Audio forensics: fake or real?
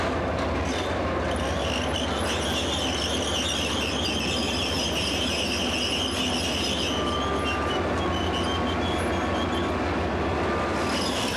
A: real